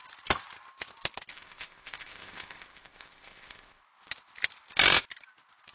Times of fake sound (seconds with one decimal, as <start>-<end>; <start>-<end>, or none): 1.3-3.8